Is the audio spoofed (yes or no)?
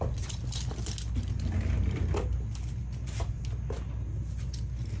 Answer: no